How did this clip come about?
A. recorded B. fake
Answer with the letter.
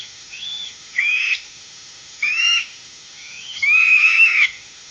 B